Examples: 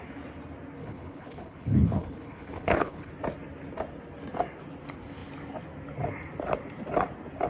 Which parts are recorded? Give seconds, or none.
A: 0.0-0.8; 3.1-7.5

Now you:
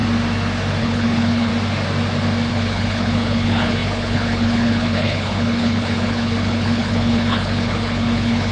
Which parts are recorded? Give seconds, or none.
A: 0.0-0.8; 1.5-2.5

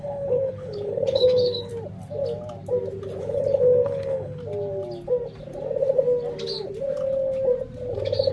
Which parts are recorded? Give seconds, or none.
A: 1.7-3.2; 4.4-8.3